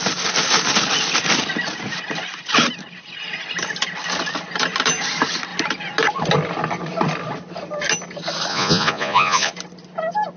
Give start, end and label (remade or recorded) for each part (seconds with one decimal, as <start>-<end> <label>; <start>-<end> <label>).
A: 0.0-8.5 recorded; 8.5-9.5 remade; 9.5-10.4 recorded